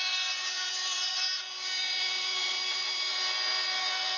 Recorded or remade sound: remade